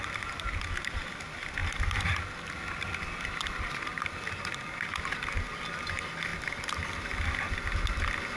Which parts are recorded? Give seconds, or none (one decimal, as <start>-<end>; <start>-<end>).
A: 0.0-8.4